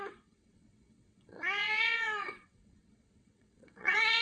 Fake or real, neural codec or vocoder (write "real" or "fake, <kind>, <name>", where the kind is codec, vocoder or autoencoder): fake, vocoder, WaveNeXt